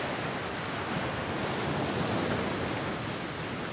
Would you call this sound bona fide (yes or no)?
yes